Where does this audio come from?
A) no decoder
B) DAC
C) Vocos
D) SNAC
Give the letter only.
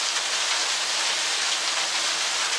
A